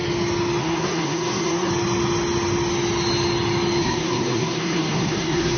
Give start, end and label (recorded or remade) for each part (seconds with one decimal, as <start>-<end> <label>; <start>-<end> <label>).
0.0-0.6 recorded; 0.6-1.7 remade; 1.7-3.8 recorded; 3.8-5.6 remade

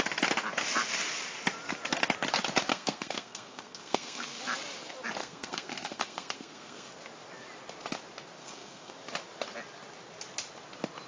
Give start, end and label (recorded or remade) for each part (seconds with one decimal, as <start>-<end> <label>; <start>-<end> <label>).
0.0-2.7 recorded; 2.7-4.4 remade; 4.4-5.2 recorded; 5.2-6.9 remade; 6.9-8.4 recorded; 8.4-8.9 remade; 8.9-11.1 recorded